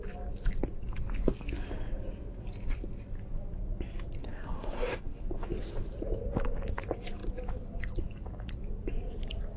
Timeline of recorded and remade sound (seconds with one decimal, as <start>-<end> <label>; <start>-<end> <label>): 0.0-4.2 recorded; 4.2-5.2 remade; 5.2-9.6 recorded